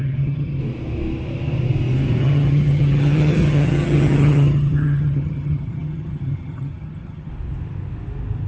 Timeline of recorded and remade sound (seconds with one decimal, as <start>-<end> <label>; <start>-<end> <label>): 0.0-0.6 remade; 0.6-2.2 recorded; 2.2-7.3 remade; 7.3-8.5 recorded